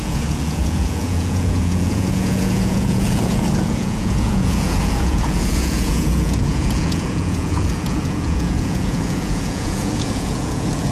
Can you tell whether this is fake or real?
fake